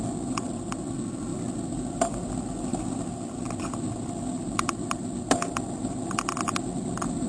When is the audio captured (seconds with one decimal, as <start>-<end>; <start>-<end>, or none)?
0.0-7.3